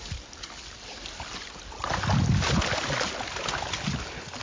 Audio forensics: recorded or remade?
recorded